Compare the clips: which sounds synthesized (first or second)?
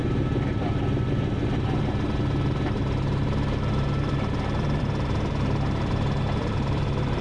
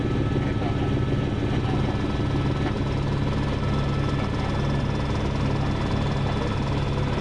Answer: first